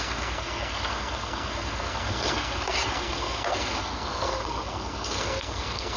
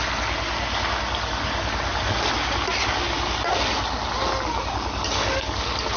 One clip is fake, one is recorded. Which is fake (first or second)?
first